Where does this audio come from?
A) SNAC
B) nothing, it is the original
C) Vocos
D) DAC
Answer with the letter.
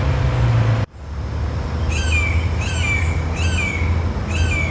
B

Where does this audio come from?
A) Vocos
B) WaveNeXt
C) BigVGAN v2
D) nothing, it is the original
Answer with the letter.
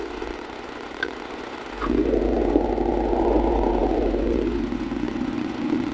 A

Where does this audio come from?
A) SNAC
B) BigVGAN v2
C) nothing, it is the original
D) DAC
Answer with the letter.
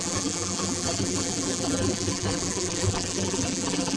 B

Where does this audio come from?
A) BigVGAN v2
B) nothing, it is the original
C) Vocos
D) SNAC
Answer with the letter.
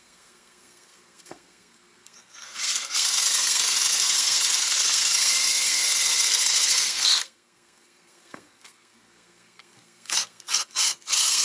D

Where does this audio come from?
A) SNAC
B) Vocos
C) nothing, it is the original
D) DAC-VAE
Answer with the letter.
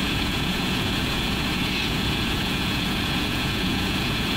B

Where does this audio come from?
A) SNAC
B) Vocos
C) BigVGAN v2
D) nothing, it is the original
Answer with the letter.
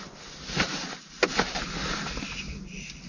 D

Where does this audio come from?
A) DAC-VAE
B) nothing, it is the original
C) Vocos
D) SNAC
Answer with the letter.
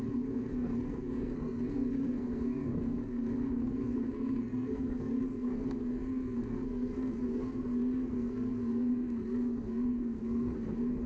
D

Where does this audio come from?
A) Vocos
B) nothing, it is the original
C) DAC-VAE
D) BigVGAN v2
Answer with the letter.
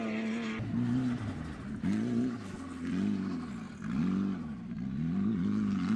B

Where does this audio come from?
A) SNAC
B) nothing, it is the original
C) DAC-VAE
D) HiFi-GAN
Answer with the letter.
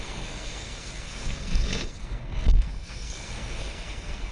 A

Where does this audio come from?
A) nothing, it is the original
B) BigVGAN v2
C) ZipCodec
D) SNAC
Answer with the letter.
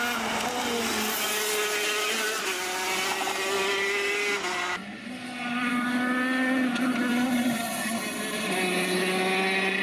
A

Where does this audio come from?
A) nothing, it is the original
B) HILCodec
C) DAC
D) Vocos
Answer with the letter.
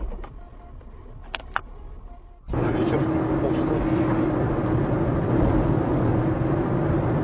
A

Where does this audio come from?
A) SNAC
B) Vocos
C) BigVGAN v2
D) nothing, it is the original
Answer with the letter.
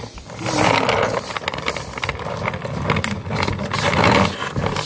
D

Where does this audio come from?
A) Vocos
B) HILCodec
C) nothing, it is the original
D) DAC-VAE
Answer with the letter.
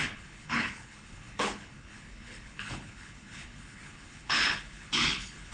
B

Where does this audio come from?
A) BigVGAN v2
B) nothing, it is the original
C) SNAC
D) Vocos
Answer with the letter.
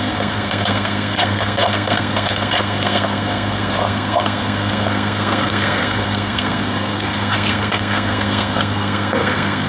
C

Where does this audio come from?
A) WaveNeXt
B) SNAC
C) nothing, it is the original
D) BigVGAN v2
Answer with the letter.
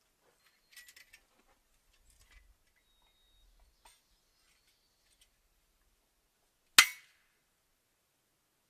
C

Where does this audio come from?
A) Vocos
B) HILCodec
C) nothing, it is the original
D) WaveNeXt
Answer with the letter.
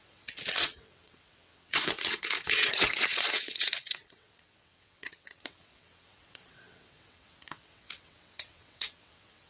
D